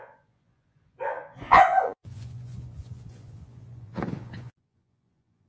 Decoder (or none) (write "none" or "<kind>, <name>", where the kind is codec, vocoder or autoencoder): vocoder, Vocos